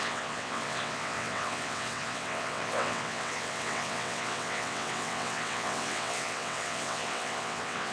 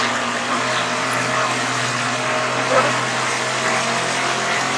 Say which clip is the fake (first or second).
first